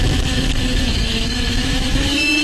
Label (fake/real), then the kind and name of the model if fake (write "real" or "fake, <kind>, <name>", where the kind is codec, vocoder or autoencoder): fake, autoencoder, DAC-VAE